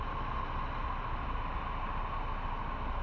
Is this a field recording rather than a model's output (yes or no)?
yes